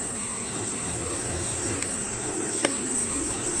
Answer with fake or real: fake